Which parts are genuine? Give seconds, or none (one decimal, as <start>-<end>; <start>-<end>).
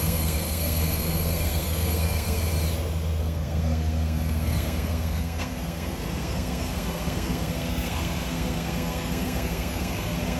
2.5-3.2